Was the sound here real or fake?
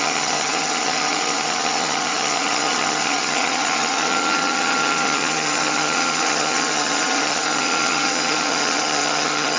fake